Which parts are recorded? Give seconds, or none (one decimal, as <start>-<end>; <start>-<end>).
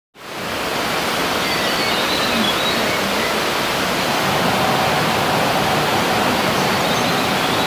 0.0-7.7